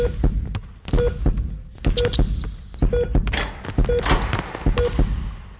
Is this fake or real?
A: real